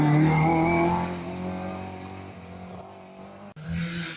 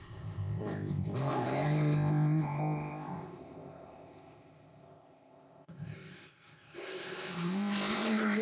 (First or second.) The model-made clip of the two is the second